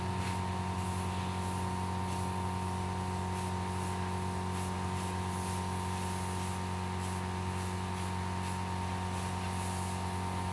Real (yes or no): yes